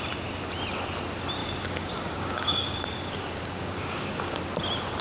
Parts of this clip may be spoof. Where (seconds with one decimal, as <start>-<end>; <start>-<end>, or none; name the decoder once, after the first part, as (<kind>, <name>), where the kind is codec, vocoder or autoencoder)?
1.4-4.4 (codec, DAC)